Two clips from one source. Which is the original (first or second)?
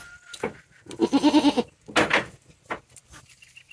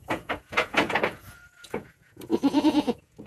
first